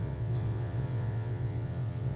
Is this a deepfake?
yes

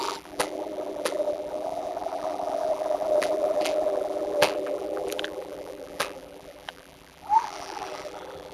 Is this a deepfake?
yes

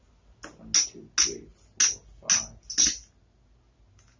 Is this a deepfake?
no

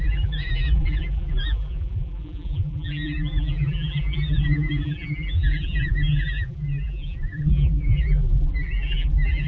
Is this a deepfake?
yes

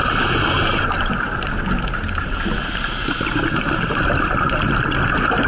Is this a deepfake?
no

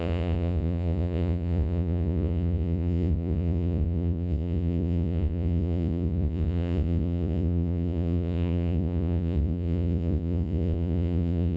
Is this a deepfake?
yes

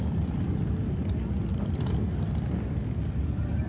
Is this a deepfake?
no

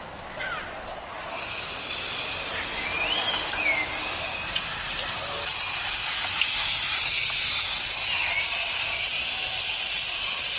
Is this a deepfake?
no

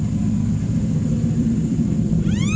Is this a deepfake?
yes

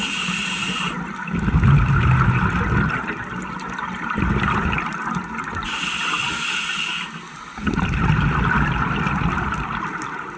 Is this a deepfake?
no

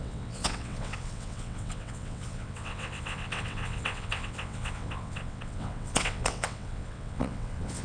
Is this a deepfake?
yes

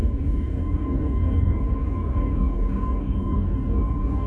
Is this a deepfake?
yes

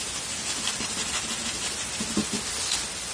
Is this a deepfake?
no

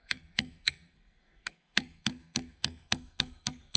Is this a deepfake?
yes